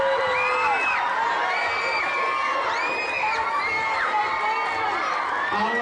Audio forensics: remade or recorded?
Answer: recorded